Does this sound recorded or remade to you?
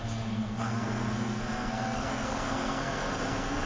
remade